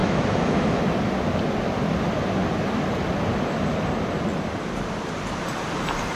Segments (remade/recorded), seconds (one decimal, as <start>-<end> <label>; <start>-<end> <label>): 0.0-0.8 remade; 0.8-6.2 recorded